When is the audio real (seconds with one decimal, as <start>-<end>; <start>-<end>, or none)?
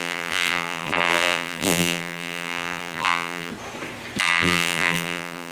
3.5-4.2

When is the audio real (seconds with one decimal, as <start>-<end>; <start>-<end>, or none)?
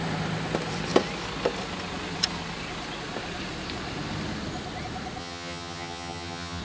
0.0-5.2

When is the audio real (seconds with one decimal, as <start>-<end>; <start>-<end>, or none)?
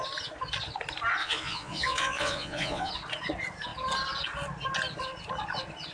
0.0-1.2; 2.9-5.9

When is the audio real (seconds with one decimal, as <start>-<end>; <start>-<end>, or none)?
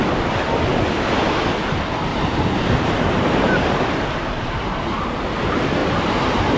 0.0-2.1; 5.0-5.8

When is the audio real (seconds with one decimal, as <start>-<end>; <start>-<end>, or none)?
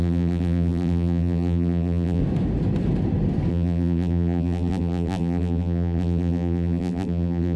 2.2-3.5